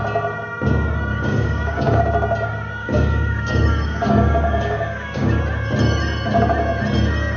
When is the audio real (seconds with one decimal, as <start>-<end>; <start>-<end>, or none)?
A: 0.0-1.1; 2.0-2.8; 5.4-7.4